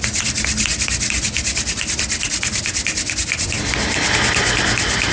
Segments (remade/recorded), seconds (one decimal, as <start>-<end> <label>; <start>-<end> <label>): 0.0-0.7 recorded; 0.7-3.4 remade; 3.4-5.1 recorded